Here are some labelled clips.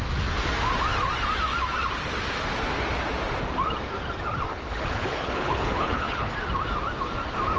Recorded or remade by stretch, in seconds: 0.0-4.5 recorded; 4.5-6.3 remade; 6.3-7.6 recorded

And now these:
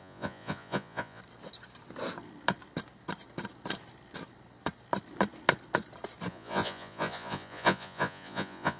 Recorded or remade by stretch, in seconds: 0.0-1.2 remade; 1.2-6.3 recorded; 6.3-8.8 remade

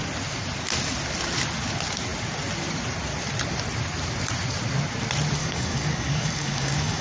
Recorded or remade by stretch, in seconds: 0.0-5.4 recorded; 5.4-7.0 remade

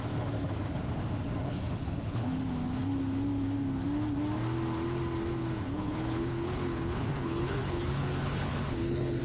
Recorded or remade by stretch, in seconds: 0.0-1.4 recorded; 1.4-2.4 remade; 2.4-5.4 recorded; 5.4-9.2 remade